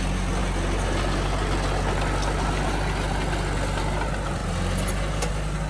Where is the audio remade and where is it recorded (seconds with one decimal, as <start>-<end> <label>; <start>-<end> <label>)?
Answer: 0.0-5.7 recorded